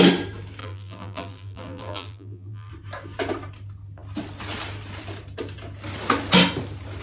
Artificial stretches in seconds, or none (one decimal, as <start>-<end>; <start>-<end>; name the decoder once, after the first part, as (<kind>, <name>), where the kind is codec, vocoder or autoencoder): 0.6-2.7 (vocoder, BigVGAN v2)